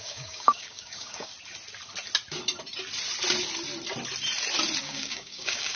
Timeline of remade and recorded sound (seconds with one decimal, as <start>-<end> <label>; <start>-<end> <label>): 0.0-1.3 remade; 1.3-4.8 recorded; 4.8-5.8 remade